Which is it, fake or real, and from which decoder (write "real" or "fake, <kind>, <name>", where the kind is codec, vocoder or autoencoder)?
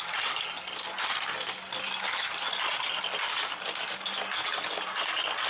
real